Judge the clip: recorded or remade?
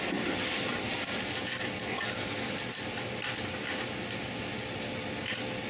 recorded